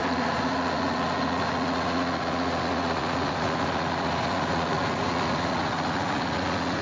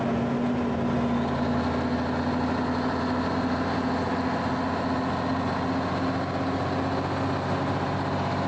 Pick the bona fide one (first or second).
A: second